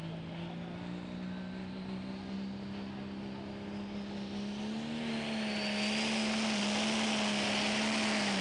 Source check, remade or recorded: recorded